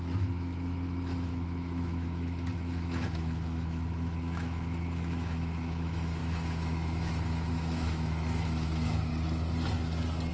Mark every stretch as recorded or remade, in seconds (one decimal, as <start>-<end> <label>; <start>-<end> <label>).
0.0-9.1 remade; 9.1-10.3 recorded